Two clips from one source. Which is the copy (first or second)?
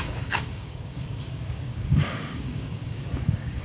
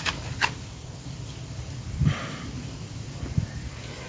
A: first